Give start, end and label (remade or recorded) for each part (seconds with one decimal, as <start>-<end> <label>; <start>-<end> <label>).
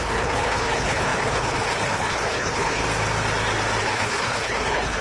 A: 0.0-2.8 remade; 2.8-3.8 recorded; 3.8-5.0 remade